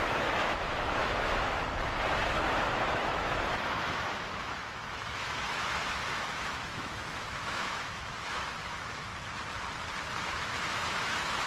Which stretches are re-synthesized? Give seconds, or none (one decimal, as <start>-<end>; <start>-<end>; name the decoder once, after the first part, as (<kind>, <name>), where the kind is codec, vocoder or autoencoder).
0.0-1.6 (autoencoder, DAC-VAE); 2.3-9.1; 10.2-11.5